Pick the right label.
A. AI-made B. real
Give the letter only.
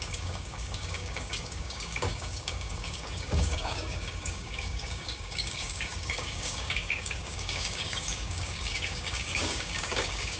A